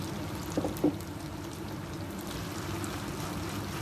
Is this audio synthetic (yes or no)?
yes